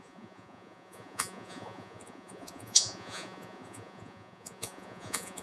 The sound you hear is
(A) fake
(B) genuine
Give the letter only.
A